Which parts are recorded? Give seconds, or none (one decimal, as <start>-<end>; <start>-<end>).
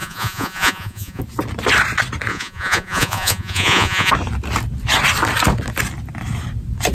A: 1.2-2.3; 4.1-6.9